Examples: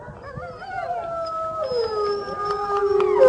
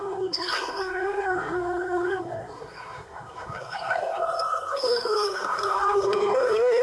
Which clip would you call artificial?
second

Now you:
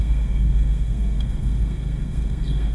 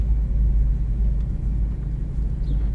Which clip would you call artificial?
first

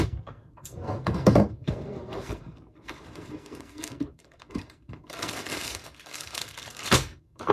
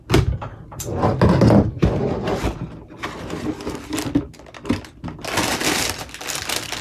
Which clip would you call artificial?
first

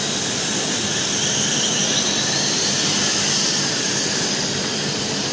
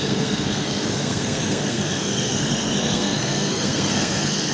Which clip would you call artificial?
second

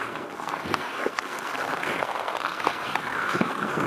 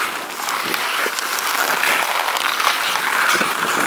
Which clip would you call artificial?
first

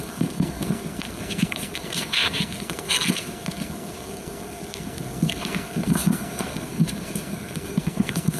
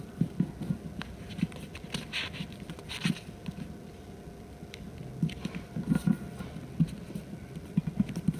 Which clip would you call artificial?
first